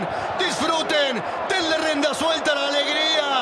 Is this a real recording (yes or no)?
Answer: yes